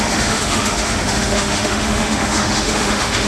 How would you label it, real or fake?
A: fake